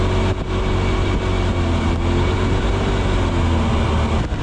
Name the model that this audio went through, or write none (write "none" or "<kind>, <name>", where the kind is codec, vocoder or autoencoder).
none